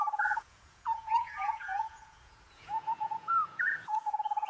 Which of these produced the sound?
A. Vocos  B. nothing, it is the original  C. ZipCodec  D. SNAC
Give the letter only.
A